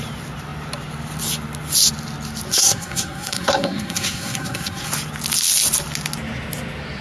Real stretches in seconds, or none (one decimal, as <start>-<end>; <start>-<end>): 0.0-2.5; 4.9-7.0